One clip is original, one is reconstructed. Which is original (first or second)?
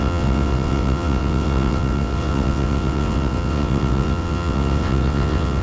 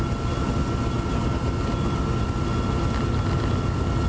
second